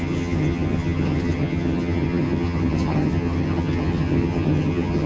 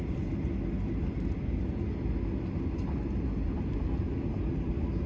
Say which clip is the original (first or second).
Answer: second